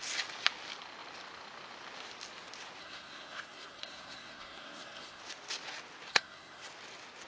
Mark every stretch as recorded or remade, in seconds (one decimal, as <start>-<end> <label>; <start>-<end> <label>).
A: 0.0-2.8 recorded; 2.8-5.2 remade; 5.2-6.1 recorded; 6.1-6.7 remade; 6.7-7.3 recorded

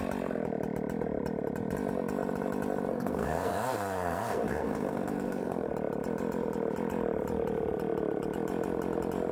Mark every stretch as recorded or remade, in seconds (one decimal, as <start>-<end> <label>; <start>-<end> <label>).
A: 0.0-2.9 recorded; 2.9-5.7 remade; 5.7-9.3 recorded

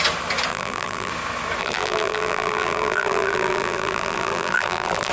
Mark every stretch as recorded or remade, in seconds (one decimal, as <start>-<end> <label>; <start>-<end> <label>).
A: 0.0-0.5 recorded; 0.5-1.1 remade; 1.1-1.6 recorded; 1.6-5.1 remade

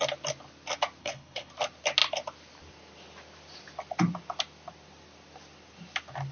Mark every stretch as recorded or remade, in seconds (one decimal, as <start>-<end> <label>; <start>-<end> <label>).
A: 0.0-1.0 recorded; 1.0-1.5 remade; 1.5-6.3 recorded

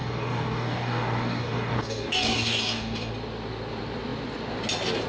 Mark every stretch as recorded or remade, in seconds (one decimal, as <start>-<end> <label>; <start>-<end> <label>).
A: 0.0-3.1 remade; 3.1-5.1 recorded

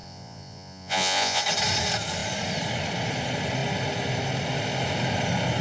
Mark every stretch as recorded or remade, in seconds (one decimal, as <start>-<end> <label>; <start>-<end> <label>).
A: 0.0-1.4 remade; 1.4-5.6 recorded

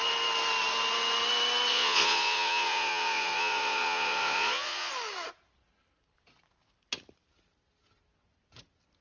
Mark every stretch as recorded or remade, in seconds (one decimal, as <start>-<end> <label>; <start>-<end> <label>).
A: 0.0-1.7 recorded; 1.7-4.9 remade; 4.9-9.0 recorded